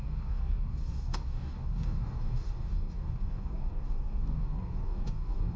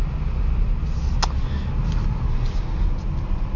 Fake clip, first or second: first